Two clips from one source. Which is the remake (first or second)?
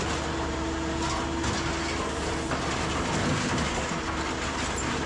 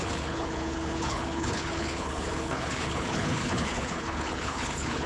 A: second